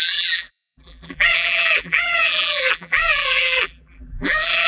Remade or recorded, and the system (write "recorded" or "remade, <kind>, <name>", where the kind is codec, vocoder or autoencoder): remade, vocoder, BigVGAN v2